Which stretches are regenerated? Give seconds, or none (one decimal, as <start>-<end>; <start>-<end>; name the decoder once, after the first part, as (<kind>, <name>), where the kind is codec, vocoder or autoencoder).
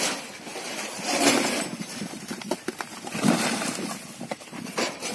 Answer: 0.5-3.1 (vocoder, BigVGAN v2); 4.3-5.1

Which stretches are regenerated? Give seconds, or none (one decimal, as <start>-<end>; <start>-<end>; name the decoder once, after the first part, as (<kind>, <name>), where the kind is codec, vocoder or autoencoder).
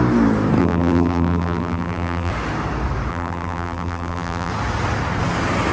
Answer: 0.6-2.3 (vocoder, BigVGAN v2); 3.1-4.5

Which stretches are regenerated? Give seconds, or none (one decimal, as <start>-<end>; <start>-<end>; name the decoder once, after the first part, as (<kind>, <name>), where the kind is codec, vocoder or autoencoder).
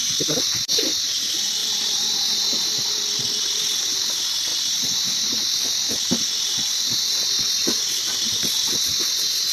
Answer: 1.6-3.0 (vocoder, BigVGAN v2); 4.5-6.7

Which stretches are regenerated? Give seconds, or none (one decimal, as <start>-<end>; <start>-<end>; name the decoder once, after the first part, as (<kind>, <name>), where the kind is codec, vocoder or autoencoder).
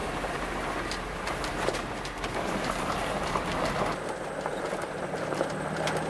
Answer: 0.0-3.7 (vocoder, BigVGAN v2)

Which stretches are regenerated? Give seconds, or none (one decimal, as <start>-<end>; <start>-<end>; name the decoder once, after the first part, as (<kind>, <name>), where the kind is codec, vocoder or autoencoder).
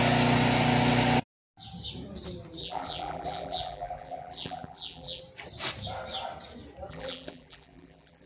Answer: 2.6-5.2 (vocoder, BigVGAN v2); 6.9-8.3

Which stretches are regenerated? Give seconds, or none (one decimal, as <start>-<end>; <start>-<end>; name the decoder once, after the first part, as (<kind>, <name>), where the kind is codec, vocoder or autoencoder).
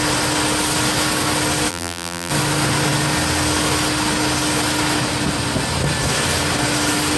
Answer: 1.7-2.3 (vocoder, BigVGAN v2)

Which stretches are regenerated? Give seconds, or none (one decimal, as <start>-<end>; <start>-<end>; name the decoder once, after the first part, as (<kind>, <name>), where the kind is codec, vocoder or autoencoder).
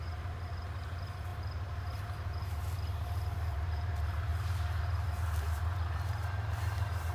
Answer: 0.0-7.1 (vocoder, BigVGAN v2)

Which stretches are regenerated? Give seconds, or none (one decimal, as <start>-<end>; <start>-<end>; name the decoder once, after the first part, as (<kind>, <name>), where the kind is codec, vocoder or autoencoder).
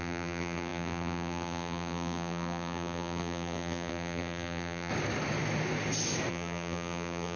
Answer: 0.0-4.9 (vocoder, BigVGAN v2); 6.3-7.4